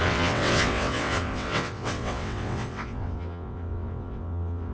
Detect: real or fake fake